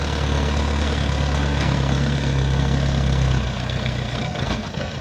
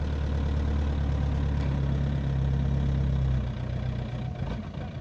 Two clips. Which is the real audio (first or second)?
second